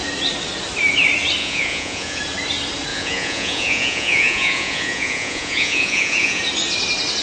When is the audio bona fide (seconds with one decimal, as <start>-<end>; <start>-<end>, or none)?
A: 0.0-1.4; 2.2-2.9; 6.4-7.2